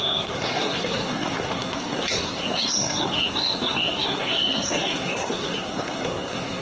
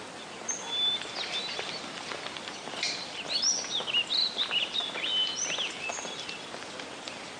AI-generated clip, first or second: first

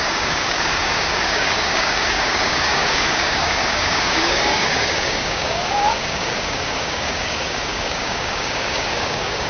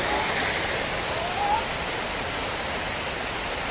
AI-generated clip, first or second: first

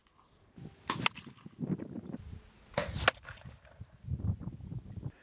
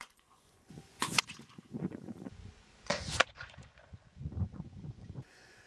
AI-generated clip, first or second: second